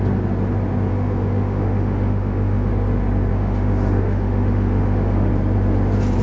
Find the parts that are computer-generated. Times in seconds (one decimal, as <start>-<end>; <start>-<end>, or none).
0.9-2.7; 3.3-5.3